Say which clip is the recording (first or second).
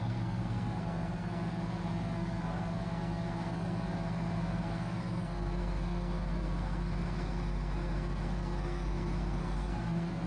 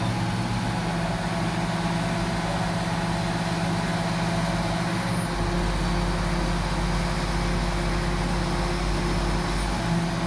second